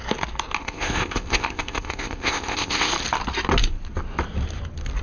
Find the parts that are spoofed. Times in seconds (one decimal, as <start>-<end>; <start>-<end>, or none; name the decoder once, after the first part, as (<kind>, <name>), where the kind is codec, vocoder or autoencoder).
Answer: 0.6-2.9 (codec, ZipCodec)